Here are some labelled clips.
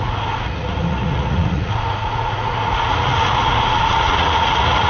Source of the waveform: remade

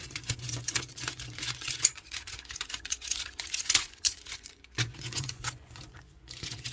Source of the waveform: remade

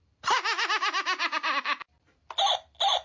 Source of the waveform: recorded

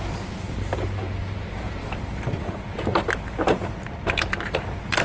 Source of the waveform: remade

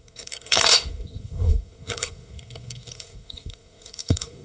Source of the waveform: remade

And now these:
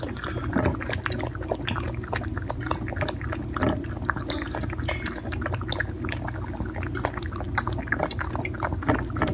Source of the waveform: recorded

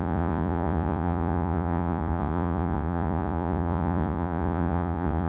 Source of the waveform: remade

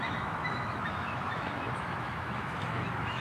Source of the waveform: remade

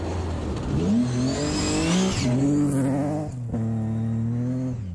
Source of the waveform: recorded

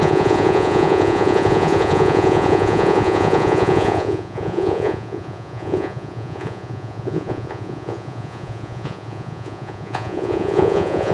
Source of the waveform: remade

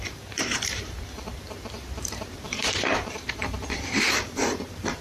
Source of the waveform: remade